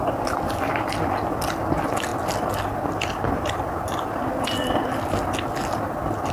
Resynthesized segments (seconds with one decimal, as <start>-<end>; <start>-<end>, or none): none